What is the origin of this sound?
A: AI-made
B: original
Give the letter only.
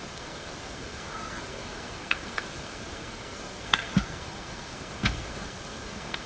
A